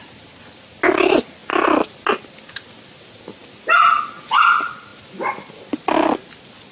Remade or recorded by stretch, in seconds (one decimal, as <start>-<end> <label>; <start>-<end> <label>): 0.0-6.7 recorded